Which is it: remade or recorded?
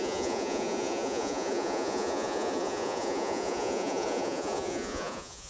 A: remade